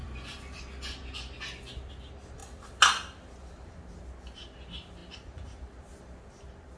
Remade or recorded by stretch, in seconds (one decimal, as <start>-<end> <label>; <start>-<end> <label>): 0.0-6.8 recorded